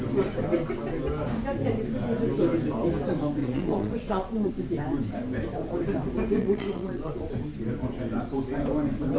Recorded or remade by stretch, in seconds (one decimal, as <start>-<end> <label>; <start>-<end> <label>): 0.0-3.4 recorded; 3.4-4.5 remade; 4.5-6.4 recorded; 6.4-7.2 remade; 7.2-9.2 recorded